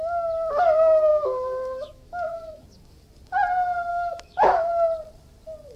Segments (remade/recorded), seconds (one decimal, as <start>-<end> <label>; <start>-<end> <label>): 0.0-1.1 recorded; 1.1-2.6 remade; 2.6-3.9 recorded; 3.9-4.7 remade; 4.7-5.8 recorded